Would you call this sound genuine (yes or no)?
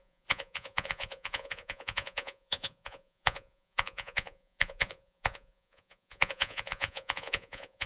no